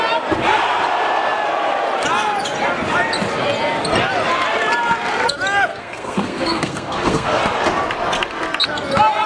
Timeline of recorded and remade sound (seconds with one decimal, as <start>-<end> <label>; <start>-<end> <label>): 0.0-5.7 recorded; 5.7-7.4 remade; 7.4-9.3 recorded